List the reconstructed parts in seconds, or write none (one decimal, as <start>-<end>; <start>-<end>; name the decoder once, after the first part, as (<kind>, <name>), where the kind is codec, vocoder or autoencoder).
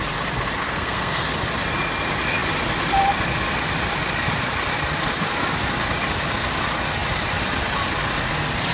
0.6-1.2 (codec, SNAC)